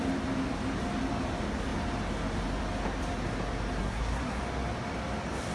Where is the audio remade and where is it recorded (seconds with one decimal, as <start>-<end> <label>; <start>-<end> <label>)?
0.0-3.8 recorded; 3.8-4.4 remade; 4.4-5.5 recorded